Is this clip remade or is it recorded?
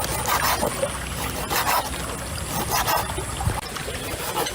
recorded